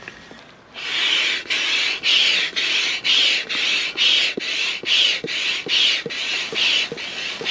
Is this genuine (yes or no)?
yes